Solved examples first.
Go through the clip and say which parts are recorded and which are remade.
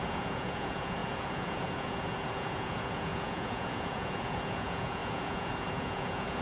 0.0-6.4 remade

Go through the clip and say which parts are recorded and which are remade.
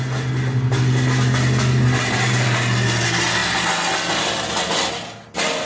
0.0-5.7 recorded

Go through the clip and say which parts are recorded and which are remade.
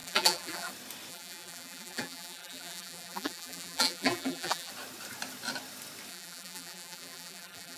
0.0-0.7 remade; 0.7-1.1 recorded; 1.1-4.7 remade; 4.7-6.1 recorded; 6.1-7.8 remade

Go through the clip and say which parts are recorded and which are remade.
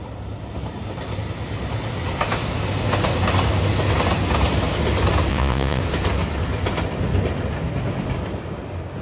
0.0-5.3 recorded; 5.3-5.8 remade; 5.8-9.0 recorded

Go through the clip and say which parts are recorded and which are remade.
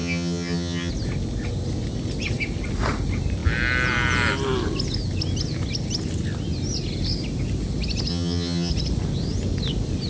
0.0-0.9 remade; 0.9-8.1 recorded; 8.1-8.7 remade; 8.7-10.1 recorded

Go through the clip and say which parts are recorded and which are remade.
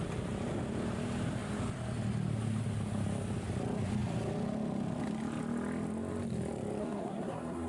0.0-6.8 recorded; 6.8-7.7 remade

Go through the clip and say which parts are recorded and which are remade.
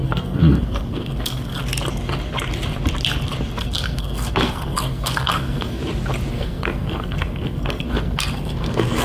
0.0-1.5 remade; 1.5-3.6 recorded; 3.6-5.8 remade; 5.8-6.3 recorded; 6.3-9.0 remade